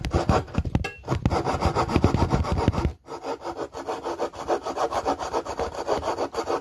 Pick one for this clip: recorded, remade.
recorded